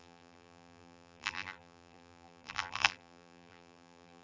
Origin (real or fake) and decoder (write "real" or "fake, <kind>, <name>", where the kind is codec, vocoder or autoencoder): fake, vocoder, BigVGAN v2